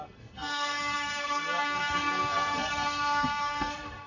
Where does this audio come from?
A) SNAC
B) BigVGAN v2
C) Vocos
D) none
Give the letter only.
A